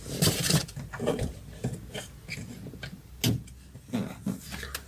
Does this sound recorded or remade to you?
recorded